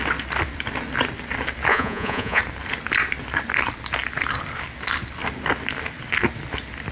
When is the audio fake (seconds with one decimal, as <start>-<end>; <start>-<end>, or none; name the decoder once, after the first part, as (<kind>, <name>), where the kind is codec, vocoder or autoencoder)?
1.7-2.4 (vocoder, Vocos)